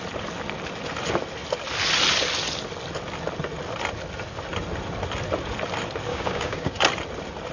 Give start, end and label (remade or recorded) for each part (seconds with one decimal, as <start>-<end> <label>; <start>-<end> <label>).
0.0-6.1 recorded; 6.1-6.8 remade; 6.8-7.5 recorded